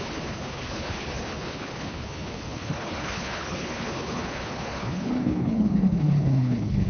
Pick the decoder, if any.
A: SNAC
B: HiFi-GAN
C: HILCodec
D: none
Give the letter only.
C